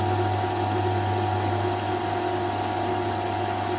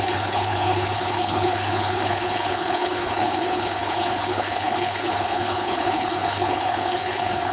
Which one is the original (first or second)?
first